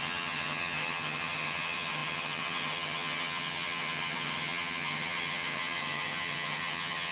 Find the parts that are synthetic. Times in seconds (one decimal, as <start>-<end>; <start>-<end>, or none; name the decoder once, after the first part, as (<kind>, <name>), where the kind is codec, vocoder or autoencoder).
0.0-7.1 (vocoder, HiFi-GAN)